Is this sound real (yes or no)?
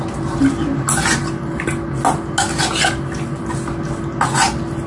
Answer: yes